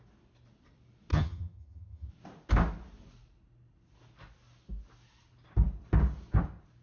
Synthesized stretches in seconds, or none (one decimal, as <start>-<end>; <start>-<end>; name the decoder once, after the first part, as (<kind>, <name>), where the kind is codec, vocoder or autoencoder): 1.1-2.1 (vocoder, HiFi-GAN)